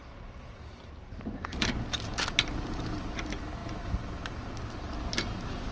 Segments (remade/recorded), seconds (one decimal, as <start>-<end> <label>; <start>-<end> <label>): 0.0-5.7 recorded